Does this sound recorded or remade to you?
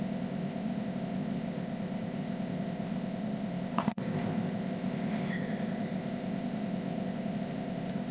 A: remade